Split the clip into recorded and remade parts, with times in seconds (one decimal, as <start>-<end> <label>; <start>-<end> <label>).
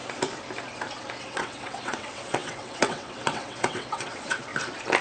0.0-1.2 recorded; 1.2-4.5 remade; 4.5-5.0 recorded